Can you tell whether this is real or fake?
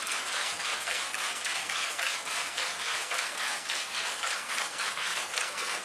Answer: fake